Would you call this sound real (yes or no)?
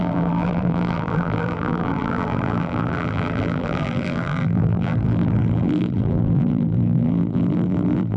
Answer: no